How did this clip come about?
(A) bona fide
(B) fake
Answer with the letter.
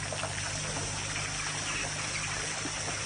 A